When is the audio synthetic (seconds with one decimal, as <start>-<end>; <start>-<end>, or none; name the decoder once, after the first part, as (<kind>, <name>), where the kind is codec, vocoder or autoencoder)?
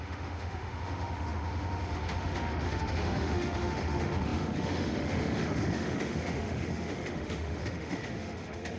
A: 0.0-8.8 (autoencoder, DAC-VAE)